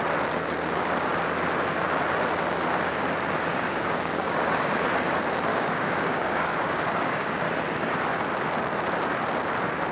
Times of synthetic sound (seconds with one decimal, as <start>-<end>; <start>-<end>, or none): 3.5-4.7; 5.5-7.5